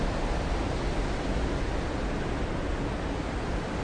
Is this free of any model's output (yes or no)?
yes